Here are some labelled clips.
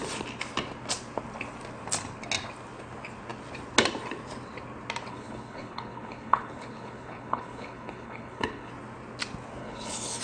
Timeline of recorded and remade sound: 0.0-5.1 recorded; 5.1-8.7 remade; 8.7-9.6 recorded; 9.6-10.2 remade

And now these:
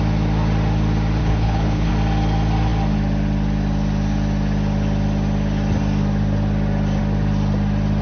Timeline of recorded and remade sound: 0.0-1.2 recorded; 1.2-1.9 remade; 1.9-8.0 recorded

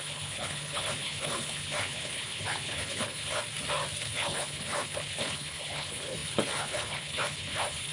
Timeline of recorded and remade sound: 0.0-3.4 remade; 3.4-4.0 recorded; 4.0-7.9 remade